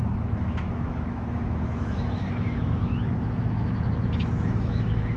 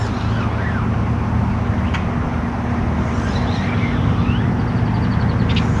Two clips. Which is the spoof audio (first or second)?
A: first